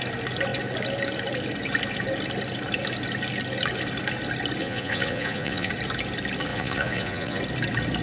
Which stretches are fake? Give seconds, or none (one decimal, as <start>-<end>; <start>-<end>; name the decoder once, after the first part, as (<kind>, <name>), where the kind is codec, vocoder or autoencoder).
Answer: 4.6-5.7 (vocoder, Vocos); 6.5-7.4